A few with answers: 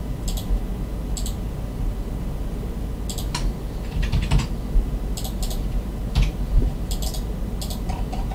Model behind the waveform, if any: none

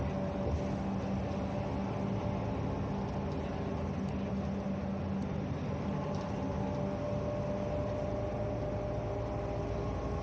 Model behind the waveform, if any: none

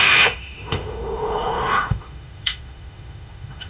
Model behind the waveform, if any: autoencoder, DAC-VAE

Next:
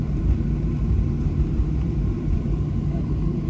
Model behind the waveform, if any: vocoder, BigVGAN v2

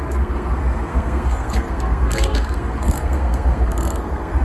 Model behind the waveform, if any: codec, SNAC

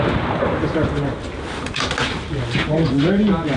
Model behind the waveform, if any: none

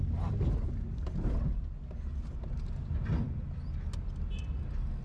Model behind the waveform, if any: none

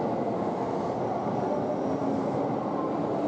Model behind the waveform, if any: none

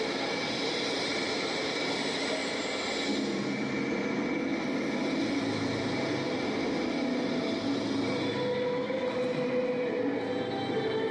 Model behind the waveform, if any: none